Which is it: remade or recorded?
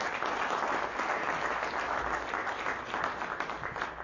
recorded